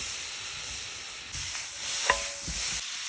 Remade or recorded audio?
recorded